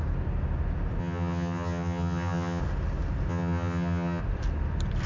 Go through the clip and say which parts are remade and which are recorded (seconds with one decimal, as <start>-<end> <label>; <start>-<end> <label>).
0.0-1.0 recorded; 1.0-2.6 remade; 2.6-3.3 recorded; 3.3-4.2 remade; 4.2-5.1 recorded